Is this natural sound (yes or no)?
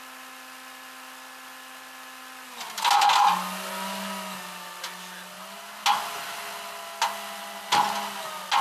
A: yes